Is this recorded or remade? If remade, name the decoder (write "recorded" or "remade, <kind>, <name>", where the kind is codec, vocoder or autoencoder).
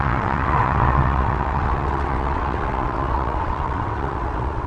remade, vocoder, WaveNeXt